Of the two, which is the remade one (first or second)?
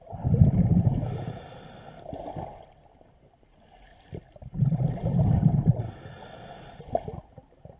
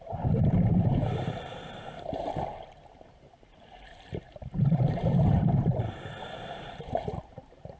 second